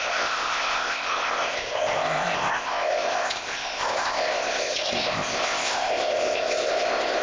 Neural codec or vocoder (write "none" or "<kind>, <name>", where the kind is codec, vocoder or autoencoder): codec, ZipCodec